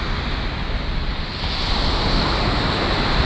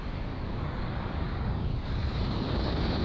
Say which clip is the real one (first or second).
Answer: first